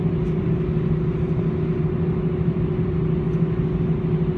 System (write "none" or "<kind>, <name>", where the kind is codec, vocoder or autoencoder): none